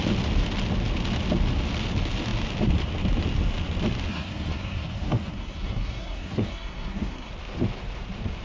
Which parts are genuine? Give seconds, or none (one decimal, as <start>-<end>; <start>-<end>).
0.0-4.1; 7.3-8.4